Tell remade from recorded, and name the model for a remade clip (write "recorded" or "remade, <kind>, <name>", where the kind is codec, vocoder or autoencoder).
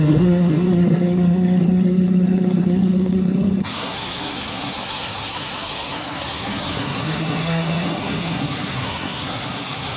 remade, codec, SNAC